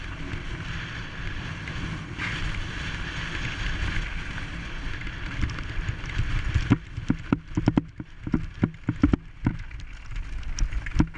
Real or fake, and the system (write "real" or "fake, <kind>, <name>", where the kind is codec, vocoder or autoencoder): real